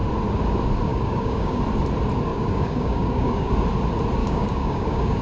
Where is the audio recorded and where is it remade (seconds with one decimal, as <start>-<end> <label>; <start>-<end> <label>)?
0.0-0.9 recorded; 0.9-1.6 remade; 1.6-2.3 recorded; 2.3-3.5 remade; 3.5-4.2 recorded; 4.2-5.2 remade